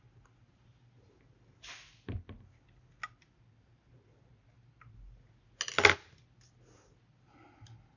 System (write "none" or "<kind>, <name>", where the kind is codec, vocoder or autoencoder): none